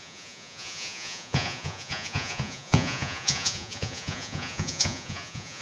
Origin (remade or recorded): remade